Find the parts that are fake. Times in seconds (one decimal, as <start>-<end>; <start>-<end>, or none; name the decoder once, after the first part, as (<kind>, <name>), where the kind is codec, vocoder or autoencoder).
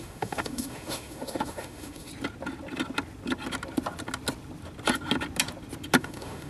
0.0-2.1 (autoencoder, DAC-VAE); 6.0-6.5